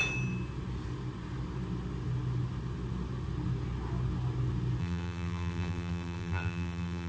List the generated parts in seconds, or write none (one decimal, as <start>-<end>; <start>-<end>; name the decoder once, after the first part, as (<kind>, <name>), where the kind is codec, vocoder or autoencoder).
4.8-7.1 (vocoder, BigVGAN v2)